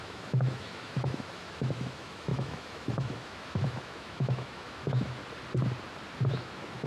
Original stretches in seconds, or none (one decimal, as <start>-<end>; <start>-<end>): 5.2-6.3